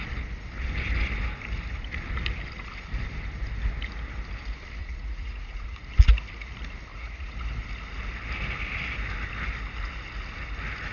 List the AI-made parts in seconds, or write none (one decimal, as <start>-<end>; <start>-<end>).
4.8-5.9; 6.9-7.4